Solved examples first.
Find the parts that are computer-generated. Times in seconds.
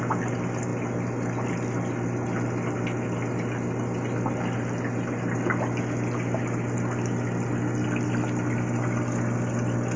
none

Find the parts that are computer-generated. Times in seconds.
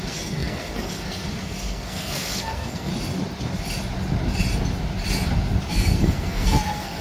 0.0-2.9 (codec, SNAC); 5.7-7.0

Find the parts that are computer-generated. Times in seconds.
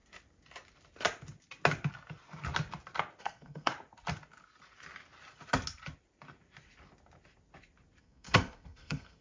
3.2-3.7 (codec, SNAC); 8.0-9.2